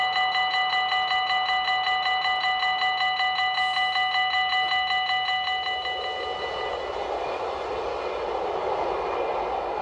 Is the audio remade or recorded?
recorded